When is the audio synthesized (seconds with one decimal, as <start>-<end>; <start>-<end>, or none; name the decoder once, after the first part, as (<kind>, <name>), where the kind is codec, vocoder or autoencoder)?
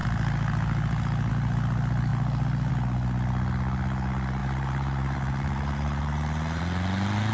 4.4-6.6 (vocoder, BigVGAN v2)